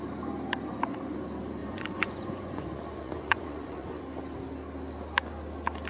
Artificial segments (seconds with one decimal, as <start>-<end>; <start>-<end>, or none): 1.6-4.0